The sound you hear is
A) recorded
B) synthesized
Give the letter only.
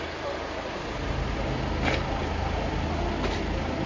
A